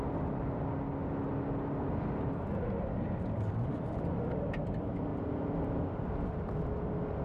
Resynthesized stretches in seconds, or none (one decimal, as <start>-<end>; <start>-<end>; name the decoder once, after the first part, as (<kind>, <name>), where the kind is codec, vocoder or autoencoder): 5.1-6.7 (vocoder, BigVGAN v2)